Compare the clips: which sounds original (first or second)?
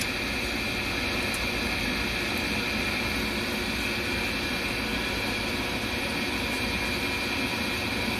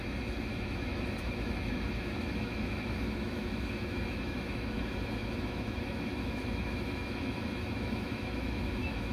first